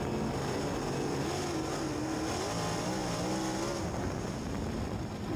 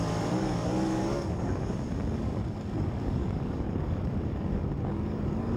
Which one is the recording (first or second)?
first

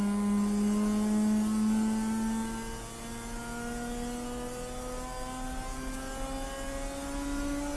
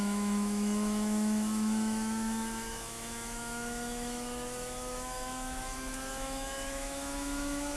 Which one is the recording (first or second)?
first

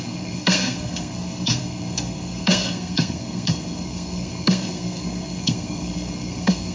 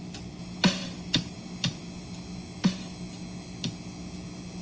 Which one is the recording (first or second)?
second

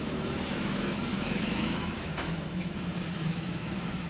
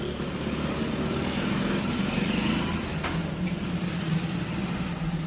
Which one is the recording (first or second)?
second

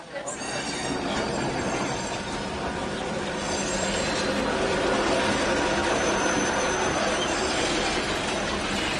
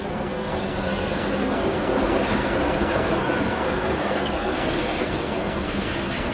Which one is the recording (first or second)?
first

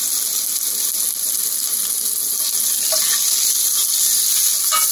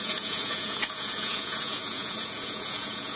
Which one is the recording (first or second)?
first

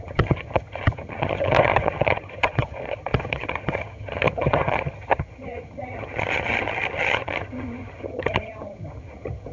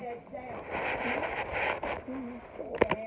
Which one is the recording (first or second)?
second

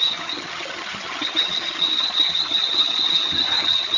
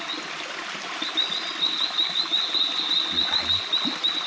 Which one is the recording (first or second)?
second